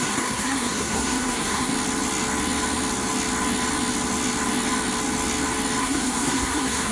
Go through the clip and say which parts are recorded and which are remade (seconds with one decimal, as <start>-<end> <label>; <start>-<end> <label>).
0.0-1.7 remade; 1.7-5.8 recorded; 5.8-6.9 remade